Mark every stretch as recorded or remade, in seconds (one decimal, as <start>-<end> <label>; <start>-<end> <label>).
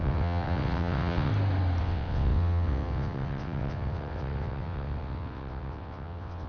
0.0-1.3 remade; 1.3-1.8 recorded; 1.8-6.5 remade